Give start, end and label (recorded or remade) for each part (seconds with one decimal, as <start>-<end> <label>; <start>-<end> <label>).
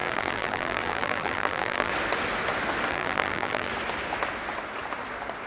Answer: 0.0-1.9 remade; 1.9-2.9 recorded; 2.9-3.7 remade; 3.7-5.5 recorded